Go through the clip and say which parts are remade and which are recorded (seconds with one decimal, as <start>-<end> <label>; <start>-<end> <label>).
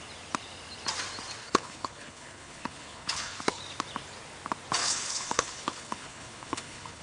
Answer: 0.0-1.4 recorded; 1.4-3.6 remade; 3.6-4.8 recorded; 4.8-7.0 remade